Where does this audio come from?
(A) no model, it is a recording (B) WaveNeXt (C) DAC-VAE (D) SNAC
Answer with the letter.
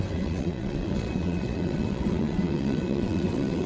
B